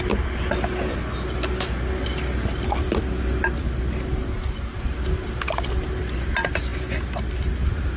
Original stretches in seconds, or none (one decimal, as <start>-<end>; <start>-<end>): 0.0-8.0